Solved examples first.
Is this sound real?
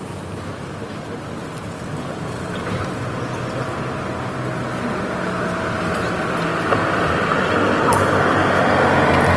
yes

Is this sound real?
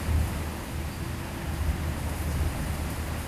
yes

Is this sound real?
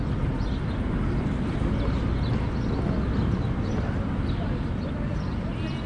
yes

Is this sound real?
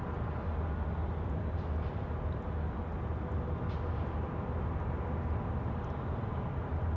yes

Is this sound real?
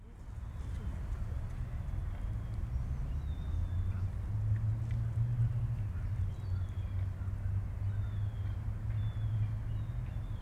yes